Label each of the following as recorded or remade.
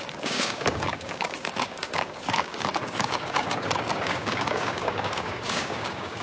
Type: remade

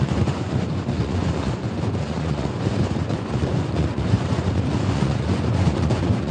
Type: remade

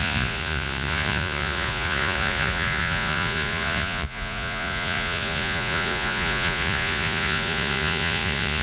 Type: remade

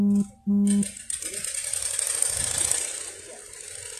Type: recorded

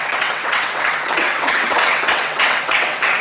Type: remade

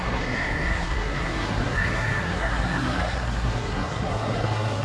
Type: remade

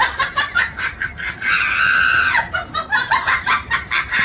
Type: remade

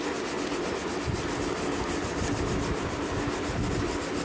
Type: recorded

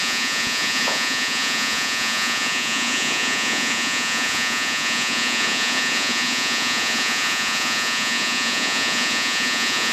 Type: remade